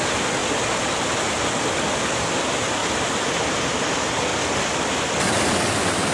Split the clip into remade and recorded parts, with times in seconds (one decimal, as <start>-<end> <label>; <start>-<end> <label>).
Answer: 0.0-6.1 recorded